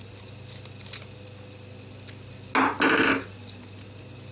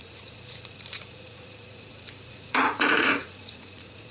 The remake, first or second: second